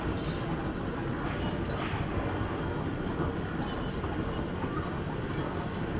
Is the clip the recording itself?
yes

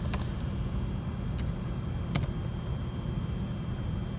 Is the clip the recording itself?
yes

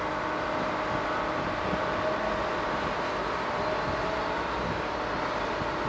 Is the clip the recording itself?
yes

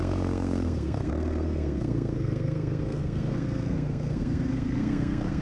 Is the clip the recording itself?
no